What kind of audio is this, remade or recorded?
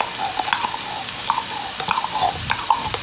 recorded